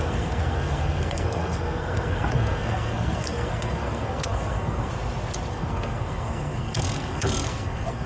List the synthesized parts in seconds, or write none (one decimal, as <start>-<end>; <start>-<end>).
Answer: 0.0-4.9; 5.5-8.1